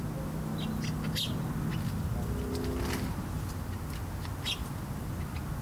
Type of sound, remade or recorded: recorded